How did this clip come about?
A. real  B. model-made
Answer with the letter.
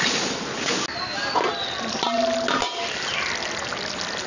A